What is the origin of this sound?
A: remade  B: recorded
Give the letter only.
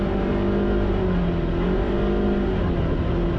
B